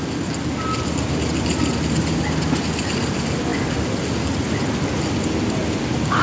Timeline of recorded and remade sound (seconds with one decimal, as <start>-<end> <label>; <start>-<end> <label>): 0.0-6.2 recorded